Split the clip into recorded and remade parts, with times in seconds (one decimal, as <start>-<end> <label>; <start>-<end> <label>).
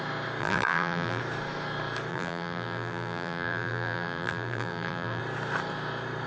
0.0-0.4 recorded; 0.4-1.2 remade; 1.2-2.1 recorded; 2.1-5.2 remade; 5.2-6.3 recorded